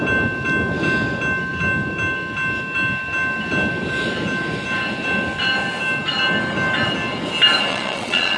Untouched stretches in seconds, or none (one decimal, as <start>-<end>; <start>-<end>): 0.0-7.7

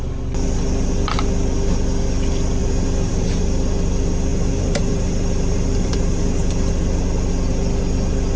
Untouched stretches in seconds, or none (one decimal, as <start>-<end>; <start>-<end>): 0.0-2.6; 3.4-4.3; 6.7-8.4

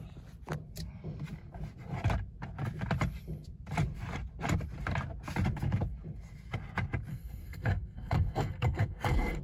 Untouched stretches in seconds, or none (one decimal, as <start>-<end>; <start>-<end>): 0.0-7.1

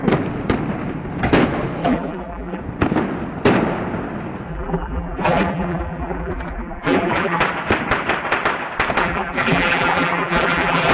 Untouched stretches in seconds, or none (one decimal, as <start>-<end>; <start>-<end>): 0.0-1.8; 2.6-4.5; 7.4-9.0

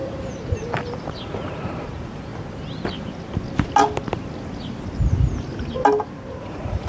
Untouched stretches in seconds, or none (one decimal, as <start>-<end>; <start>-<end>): 0.0-1.0; 2.3-6.4